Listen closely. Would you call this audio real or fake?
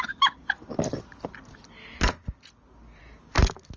real